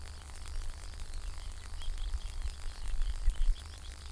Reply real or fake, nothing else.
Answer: fake